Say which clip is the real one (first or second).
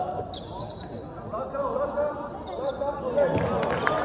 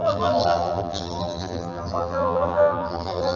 first